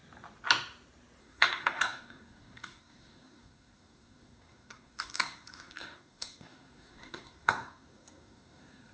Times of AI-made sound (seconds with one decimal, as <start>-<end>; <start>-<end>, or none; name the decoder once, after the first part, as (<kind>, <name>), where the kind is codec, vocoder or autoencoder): 1.2-8.9 (codec, SNAC)